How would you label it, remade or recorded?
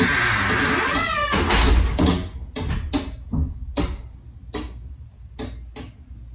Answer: recorded